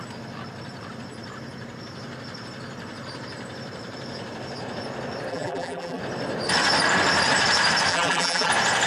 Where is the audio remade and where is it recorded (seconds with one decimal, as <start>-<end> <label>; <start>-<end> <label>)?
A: 0.0-5.3 recorded; 5.3-6.0 remade; 6.0-7.9 recorded; 7.9-8.5 remade; 8.5-8.9 recorded